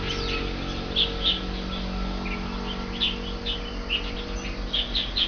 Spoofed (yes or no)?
no